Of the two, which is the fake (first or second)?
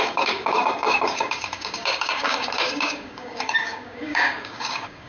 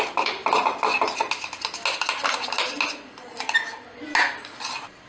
first